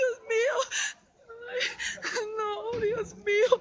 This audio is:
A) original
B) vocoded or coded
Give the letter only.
A